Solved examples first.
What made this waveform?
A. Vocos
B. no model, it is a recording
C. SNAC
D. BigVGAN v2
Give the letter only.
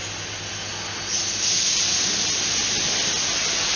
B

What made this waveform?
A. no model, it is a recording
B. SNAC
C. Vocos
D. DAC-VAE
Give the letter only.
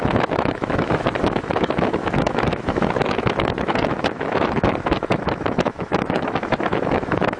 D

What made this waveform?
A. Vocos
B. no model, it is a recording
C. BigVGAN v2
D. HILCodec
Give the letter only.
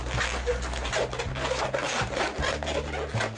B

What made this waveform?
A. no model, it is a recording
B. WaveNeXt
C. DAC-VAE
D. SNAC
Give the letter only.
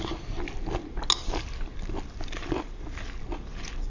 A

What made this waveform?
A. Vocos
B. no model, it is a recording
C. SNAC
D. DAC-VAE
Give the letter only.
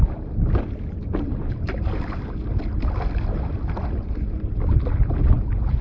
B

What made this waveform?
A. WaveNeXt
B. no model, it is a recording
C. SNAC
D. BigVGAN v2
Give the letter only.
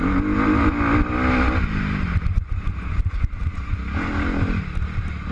B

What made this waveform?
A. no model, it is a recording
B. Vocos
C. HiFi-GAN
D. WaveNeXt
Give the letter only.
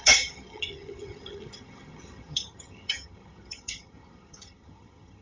C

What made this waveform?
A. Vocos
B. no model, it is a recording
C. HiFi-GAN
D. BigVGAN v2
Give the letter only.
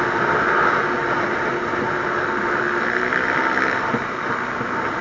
B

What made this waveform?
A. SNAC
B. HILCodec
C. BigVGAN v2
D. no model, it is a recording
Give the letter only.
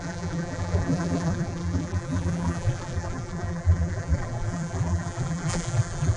C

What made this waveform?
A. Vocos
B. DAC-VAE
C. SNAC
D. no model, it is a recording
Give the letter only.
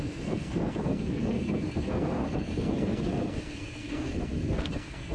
C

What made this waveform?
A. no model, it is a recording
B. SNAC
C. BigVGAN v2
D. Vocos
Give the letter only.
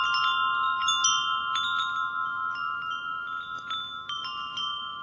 A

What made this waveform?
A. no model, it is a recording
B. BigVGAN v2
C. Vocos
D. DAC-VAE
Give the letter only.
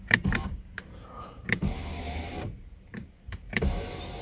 B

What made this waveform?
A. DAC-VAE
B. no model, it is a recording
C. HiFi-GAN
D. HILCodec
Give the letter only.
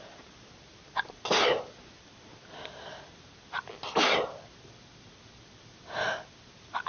B